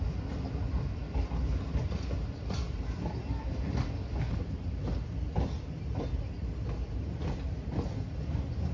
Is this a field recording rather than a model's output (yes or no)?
yes